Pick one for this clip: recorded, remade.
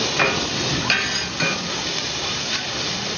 remade